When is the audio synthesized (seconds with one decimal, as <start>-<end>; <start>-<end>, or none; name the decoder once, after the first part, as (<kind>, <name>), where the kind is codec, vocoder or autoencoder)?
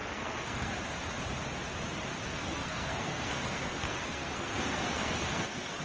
0.0-0.7 (codec, SNAC); 2.2-5.8